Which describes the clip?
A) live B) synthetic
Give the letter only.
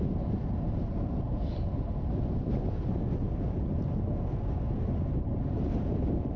A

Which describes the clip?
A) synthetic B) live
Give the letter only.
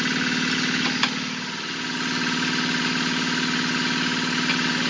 B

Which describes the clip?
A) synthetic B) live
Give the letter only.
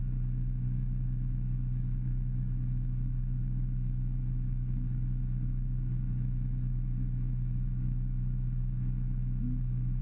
A